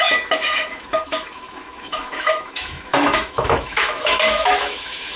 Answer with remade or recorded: remade